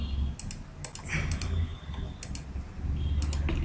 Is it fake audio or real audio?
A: real